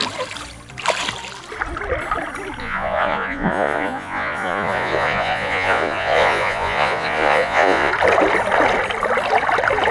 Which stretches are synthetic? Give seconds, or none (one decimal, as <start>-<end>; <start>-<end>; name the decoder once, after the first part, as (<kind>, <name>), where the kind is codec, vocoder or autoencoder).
2.6-7.9 (vocoder, Vocos)